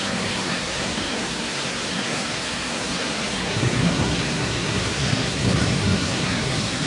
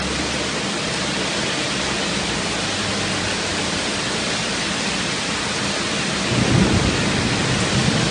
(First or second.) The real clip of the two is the second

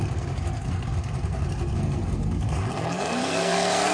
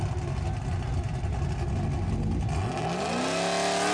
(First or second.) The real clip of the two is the second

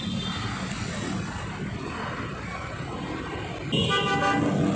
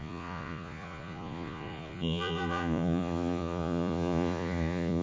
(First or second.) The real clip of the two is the first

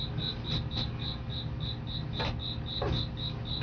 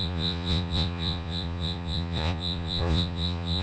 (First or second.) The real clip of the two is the first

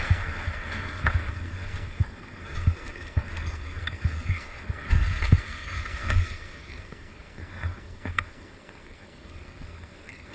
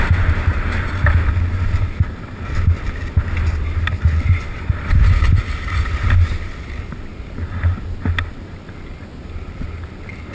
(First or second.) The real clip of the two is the second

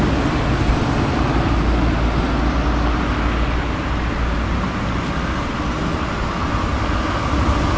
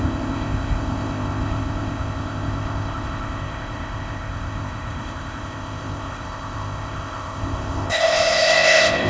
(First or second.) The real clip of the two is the first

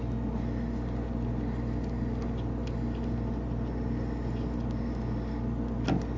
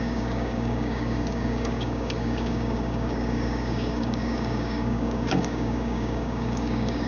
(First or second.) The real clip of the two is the first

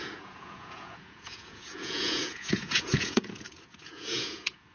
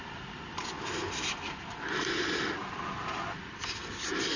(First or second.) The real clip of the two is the second